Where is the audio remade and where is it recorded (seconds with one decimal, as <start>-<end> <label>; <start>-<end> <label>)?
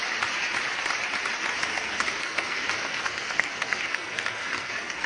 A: 0.0-1.6 recorded; 1.6-5.1 remade